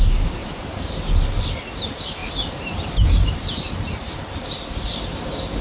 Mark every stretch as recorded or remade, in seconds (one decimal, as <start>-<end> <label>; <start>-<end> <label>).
0.0-0.4 recorded; 0.4-0.9 remade; 0.9-2.2 recorded; 2.2-4.1 remade; 4.1-5.6 recorded